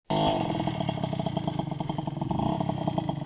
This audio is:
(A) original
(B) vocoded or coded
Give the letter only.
A